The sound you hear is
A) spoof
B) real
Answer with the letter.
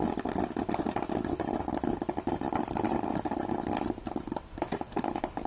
B